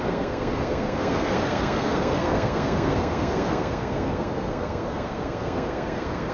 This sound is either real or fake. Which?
fake